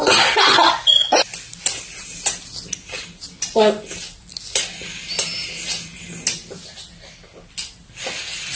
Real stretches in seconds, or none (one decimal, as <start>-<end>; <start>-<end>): 0.0-8.6